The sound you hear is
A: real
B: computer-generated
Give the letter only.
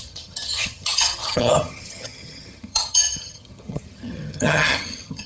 B